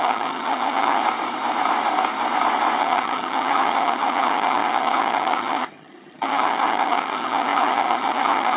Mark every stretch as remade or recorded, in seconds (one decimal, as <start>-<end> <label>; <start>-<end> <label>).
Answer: 0.0-1.0 remade; 1.0-2.8 recorded; 2.8-8.6 remade